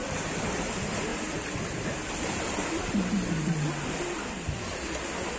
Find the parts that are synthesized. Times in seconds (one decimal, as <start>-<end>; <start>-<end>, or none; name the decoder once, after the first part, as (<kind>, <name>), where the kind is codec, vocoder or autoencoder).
none